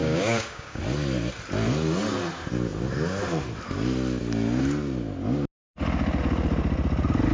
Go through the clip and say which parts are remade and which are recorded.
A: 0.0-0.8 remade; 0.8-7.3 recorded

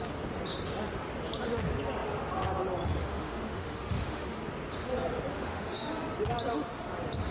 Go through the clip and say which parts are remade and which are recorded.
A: 0.0-3.0 recorded; 3.0-4.4 remade; 4.4-5.3 recorded; 5.3-5.9 remade; 5.9-7.3 recorded

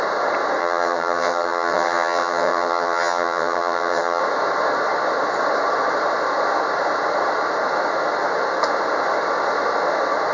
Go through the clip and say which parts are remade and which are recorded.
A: 0.0-0.6 recorded; 0.6-4.2 remade; 4.2-10.3 recorded

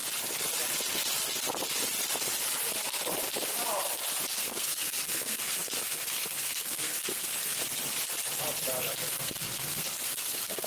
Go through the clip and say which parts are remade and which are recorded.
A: 0.0-4.4 recorded; 4.4-7.6 remade; 7.6-8.8 recorded; 8.8-10.7 remade

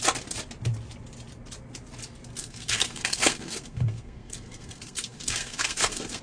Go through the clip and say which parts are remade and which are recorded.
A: 0.0-2.4 recorded; 2.4-6.2 remade

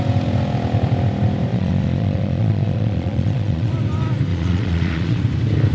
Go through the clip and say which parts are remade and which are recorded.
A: 0.0-1.5 recorded; 1.5-3.7 remade; 3.7-4.3 recorded; 4.3-5.2 remade; 5.2-5.7 recorded